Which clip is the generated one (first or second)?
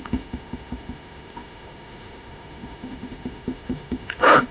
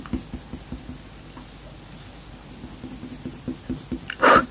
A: first